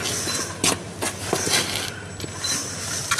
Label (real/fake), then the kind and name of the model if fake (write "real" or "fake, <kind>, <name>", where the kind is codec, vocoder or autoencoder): real